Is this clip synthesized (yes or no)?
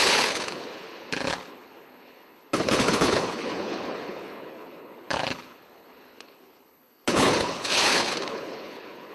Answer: yes